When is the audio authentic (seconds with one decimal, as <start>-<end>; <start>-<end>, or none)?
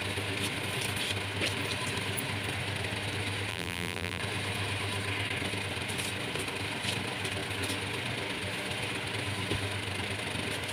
0.0-3.5; 4.2-10.7